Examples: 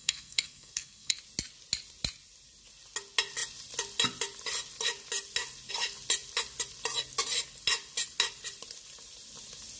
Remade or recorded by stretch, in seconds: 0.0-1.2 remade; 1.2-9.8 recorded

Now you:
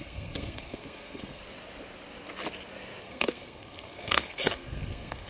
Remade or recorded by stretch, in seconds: 0.0-1.4 remade; 1.4-3.0 recorded; 3.0-5.3 remade